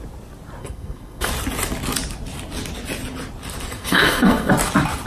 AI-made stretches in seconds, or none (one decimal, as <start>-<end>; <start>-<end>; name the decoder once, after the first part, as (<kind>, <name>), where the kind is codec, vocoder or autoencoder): 0.6-1.3 (codec, SNAC); 3.7-4.5